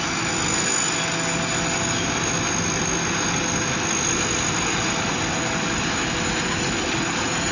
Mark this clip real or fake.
real